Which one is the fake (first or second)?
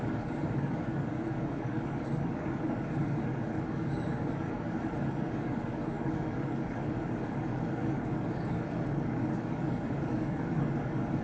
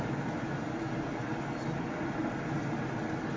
first